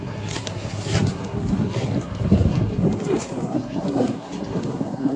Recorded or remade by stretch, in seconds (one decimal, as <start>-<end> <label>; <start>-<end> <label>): 0.0-5.2 remade